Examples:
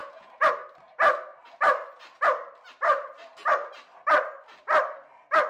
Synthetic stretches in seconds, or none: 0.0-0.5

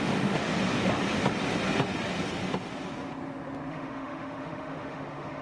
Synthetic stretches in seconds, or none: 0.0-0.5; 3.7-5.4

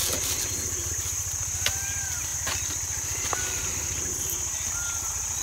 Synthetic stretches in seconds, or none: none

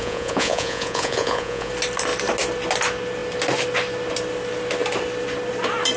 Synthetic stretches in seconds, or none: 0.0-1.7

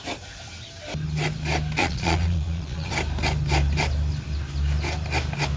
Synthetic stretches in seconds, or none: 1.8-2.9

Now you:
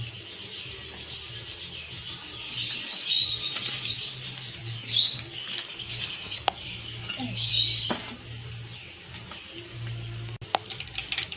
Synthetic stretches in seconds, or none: 4.6-7.5

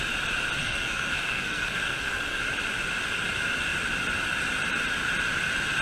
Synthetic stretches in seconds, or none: 0.6-2.4